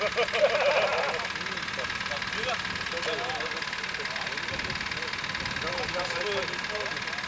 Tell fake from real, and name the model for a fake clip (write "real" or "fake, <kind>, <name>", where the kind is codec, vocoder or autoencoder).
real